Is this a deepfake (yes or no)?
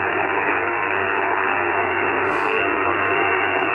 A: yes